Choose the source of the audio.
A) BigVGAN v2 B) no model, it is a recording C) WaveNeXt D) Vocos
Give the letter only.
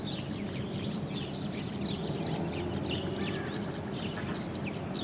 B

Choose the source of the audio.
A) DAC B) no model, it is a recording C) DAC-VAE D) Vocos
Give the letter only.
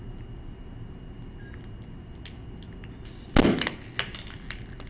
B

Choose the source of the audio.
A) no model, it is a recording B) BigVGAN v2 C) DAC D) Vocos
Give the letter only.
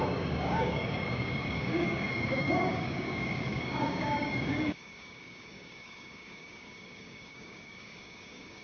C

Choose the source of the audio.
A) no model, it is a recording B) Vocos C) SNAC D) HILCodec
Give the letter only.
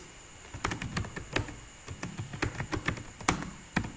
A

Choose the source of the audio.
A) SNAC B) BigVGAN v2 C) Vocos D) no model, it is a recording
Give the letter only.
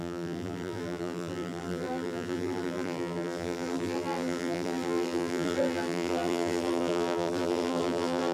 B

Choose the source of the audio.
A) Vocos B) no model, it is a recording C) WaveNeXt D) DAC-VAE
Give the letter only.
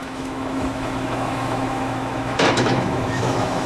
D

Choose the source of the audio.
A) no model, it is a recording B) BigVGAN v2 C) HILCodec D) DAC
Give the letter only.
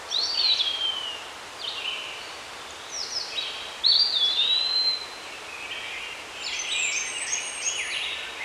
A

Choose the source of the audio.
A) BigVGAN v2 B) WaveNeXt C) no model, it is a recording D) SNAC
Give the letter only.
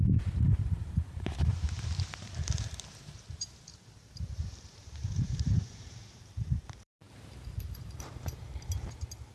A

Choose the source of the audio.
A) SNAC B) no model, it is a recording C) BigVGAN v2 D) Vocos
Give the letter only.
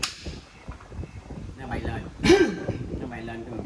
B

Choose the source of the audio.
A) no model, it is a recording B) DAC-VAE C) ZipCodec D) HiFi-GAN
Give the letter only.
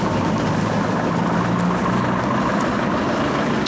A